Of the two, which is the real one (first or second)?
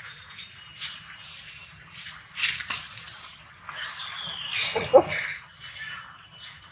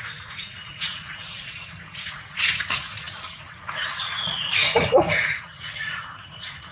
first